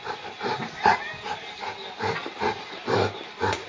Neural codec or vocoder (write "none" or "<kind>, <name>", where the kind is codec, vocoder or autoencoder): none